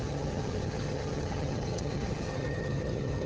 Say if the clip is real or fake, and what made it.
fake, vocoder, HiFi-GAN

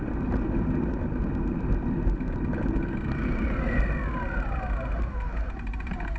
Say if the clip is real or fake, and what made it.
real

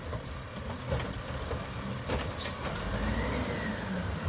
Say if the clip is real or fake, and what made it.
real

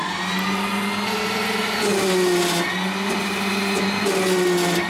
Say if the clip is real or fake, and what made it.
real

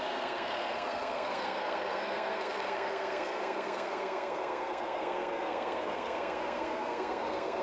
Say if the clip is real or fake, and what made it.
fake, codec, SNAC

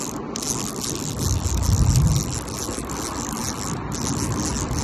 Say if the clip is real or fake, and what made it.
real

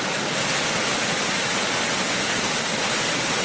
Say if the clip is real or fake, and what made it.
real